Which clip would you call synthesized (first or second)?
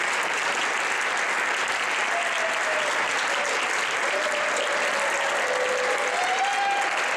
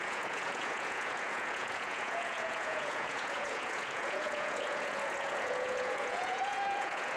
second